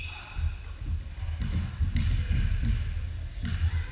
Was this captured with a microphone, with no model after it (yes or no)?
yes